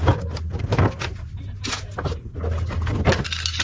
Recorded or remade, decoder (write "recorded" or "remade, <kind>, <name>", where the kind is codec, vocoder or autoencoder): recorded